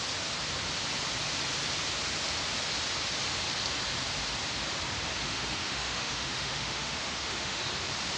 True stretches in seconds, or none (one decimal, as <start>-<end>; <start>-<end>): 0.0-5.2; 7.6-8.2